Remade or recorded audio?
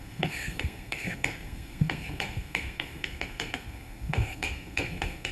remade